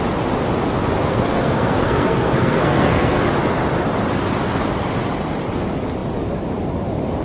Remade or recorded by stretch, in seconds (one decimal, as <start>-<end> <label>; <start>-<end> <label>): 0.0-1.0 recorded; 1.0-3.2 remade; 3.2-7.2 recorded